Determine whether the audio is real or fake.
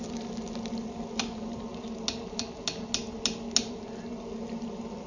real